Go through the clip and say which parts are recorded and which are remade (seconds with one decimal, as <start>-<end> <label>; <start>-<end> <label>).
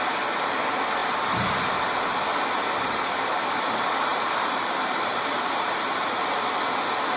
0.0-1.0 recorded; 1.0-1.7 remade; 1.7-4.1 recorded; 4.1-6.5 remade; 6.5-7.2 recorded